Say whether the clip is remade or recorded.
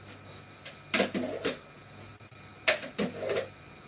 recorded